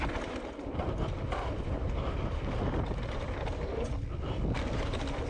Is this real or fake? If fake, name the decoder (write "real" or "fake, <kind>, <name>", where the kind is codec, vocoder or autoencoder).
real